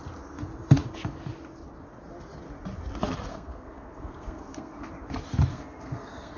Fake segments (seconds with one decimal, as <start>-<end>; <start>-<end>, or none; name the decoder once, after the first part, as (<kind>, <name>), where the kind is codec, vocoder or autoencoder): 3.3-4.9 (codec, SNAC); 5.5-6.4